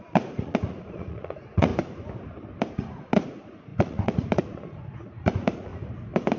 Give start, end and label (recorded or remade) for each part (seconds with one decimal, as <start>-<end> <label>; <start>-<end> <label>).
0.0-1.7 remade; 1.7-2.7 recorded; 2.7-5.7 remade; 5.7-6.4 recorded